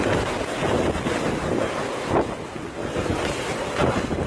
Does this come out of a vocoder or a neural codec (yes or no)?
no